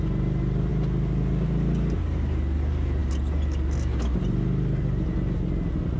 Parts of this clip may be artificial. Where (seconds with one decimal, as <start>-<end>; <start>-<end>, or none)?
none